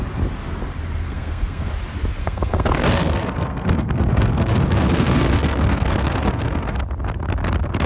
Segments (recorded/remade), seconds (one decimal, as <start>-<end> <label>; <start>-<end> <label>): 0.0-1.1 recorded; 1.1-1.7 remade; 1.7-2.2 recorded; 2.2-6.8 remade; 6.8-7.9 recorded